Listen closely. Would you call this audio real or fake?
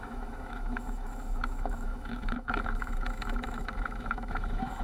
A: fake